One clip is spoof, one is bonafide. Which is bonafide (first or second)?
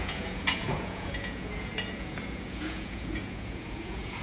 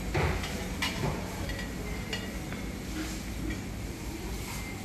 second